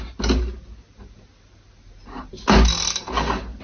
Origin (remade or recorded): recorded